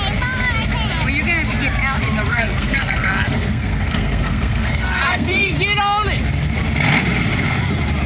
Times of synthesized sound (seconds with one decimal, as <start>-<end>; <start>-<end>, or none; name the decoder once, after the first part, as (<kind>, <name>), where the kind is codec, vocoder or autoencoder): 2.3-5.5 (codec, SNAC)